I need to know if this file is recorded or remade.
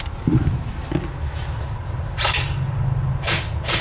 recorded